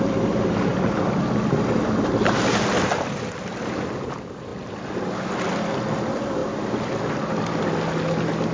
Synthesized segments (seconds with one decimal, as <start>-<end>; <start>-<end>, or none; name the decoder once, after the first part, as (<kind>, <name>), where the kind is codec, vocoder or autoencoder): 6.4-6.9 (vocoder, BigVGAN v2)